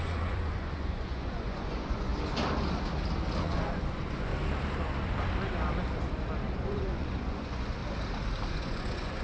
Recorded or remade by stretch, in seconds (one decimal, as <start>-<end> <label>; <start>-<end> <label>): 0.0-2.1 remade; 2.1-3.4 recorded; 3.4-4.3 remade; 4.3-6.6 recorded; 6.6-7.8 remade; 7.8-8.5 recorded; 8.5-9.2 remade